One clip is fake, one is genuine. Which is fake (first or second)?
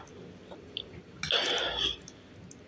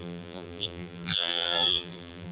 second